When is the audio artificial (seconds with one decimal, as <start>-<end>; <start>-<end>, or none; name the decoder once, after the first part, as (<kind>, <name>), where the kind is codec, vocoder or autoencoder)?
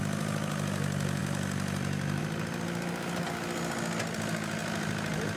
1.2-2.2 (vocoder, BigVGAN v2)